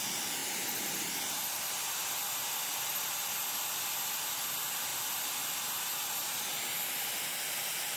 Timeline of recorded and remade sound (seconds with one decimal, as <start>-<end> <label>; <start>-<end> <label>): 0.0-0.4 recorded; 0.4-1.7 remade; 1.7-2.7 recorded; 2.7-3.3 remade; 3.3-8.0 recorded